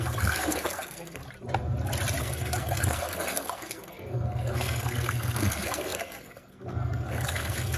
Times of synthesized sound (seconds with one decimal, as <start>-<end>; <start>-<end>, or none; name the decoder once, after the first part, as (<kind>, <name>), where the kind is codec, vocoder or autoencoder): 0.0-1.2 (codec, SNAC); 2.2-7.8